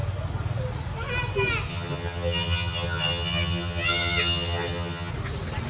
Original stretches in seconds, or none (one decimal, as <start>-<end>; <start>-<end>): 0.0-1.7; 5.1-5.7